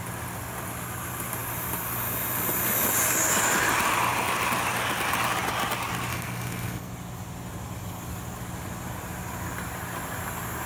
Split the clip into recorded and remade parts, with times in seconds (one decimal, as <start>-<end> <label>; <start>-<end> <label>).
0.0-6.1 recorded; 6.1-6.9 remade; 6.9-10.7 recorded